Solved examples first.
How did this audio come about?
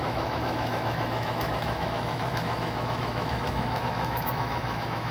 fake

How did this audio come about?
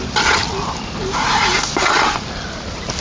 real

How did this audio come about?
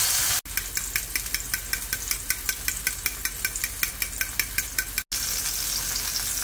real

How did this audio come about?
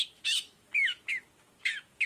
fake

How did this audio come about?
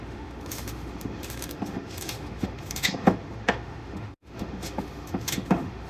fake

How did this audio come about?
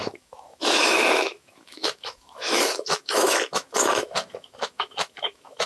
fake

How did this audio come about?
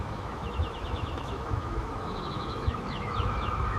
fake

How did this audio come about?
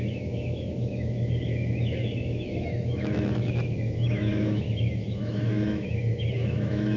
fake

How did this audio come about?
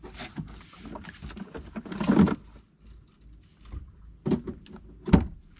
real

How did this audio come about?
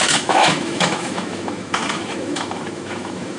fake